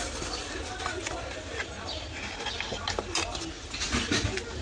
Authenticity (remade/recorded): recorded